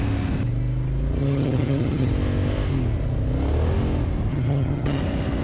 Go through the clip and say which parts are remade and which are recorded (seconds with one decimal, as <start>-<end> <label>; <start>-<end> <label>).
0.0-1.2 recorded; 1.2-2.1 remade; 2.1-4.3 recorded; 4.3-5.0 remade; 5.0-5.4 recorded

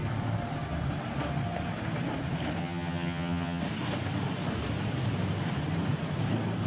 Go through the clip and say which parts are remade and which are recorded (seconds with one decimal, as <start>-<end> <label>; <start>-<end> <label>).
0.0-2.6 recorded; 2.6-3.6 remade; 3.6-6.7 recorded

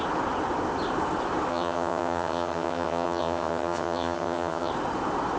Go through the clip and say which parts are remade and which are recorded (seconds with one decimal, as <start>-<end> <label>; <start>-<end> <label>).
0.0-1.5 recorded; 1.5-4.7 remade; 4.7-5.4 recorded

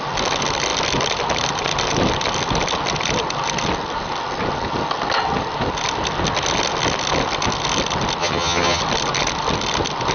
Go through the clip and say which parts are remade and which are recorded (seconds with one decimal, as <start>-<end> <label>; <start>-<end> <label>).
0.0-8.2 recorded; 8.2-8.8 remade; 8.8-10.1 recorded

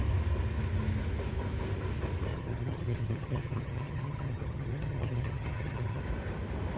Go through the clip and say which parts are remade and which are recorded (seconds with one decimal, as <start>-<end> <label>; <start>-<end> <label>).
0.0-2.3 recorded; 2.3-6.0 remade; 6.0-6.8 recorded

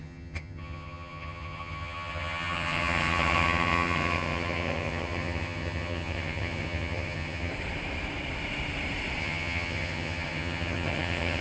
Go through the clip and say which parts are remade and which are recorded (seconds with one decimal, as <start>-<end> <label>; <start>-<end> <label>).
0.0-7.5 remade; 7.5-9.2 recorded; 9.2-11.4 remade

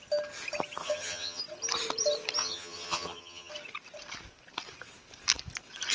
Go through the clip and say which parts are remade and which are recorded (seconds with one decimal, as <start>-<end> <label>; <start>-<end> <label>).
0.0-0.8 recorded; 0.8-1.4 remade; 1.4-2.4 recorded; 2.4-3.5 remade; 3.5-5.9 recorded

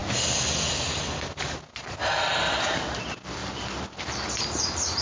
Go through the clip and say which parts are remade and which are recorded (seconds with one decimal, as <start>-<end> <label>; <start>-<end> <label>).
0.0-5.0 recorded